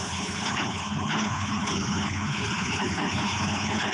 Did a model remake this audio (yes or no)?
yes